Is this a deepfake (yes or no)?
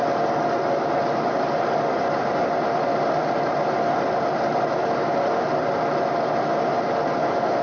no